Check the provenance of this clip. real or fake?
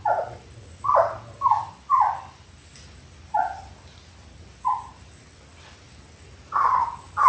real